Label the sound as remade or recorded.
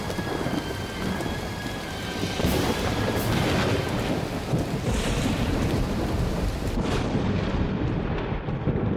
remade